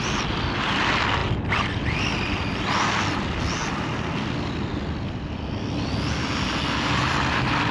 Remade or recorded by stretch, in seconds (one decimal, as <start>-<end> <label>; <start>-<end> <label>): 0.0-7.7 recorded

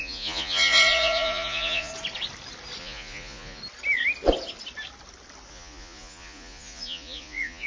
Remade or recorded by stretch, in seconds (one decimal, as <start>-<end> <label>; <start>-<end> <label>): 0.0-1.9 remade; 1.9-2.8 recorded; 2.8-3.6 remade; 3.6-5.5 recorded; 5.5-7.7 remade

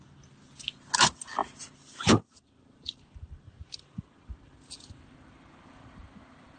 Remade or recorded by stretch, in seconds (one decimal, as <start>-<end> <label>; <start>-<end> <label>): 0.0-6.6 recorded

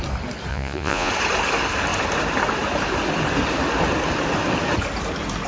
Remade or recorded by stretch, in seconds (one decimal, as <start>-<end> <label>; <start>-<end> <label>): 0.0-0.5 recorded; 0.5-1.1 remade; 1.1-5.5 recorded